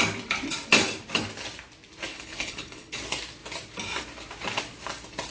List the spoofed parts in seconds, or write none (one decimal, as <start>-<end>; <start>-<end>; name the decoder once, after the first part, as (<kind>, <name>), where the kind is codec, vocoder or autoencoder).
2.1-3.0 (codec, HILCodec)